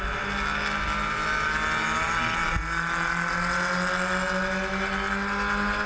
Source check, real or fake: real